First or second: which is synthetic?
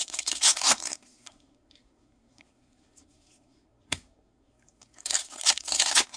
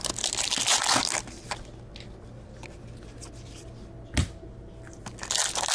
first